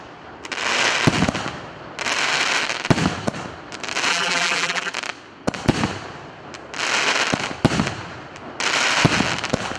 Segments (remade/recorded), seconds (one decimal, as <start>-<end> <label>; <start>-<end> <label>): 0.0-4.1 recorded; 4.1-4.9 remade; 4.9-9.8 recorded